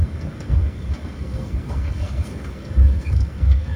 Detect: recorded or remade remade